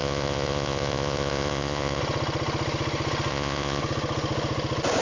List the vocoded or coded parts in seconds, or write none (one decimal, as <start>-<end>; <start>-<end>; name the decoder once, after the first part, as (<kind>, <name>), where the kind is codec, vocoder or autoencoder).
0.0-2.0 (vocoder, Vocos); 3.3-3.8